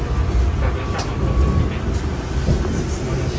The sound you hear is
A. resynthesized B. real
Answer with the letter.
B